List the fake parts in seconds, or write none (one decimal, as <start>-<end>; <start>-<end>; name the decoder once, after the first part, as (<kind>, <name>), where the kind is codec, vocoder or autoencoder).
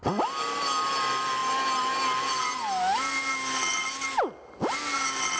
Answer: none